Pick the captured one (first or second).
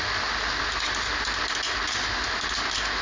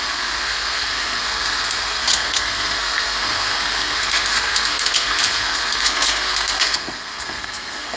first